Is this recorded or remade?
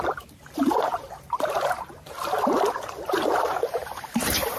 remade